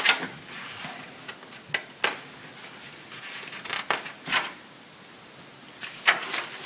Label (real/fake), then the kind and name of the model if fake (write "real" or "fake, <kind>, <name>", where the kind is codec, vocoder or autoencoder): real